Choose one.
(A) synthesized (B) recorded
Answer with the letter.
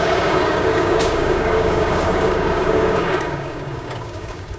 A